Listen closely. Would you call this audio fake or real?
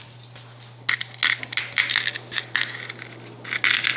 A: real